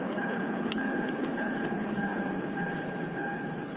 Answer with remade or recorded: remade